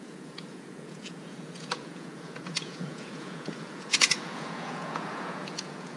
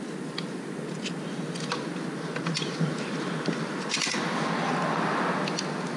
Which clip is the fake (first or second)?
first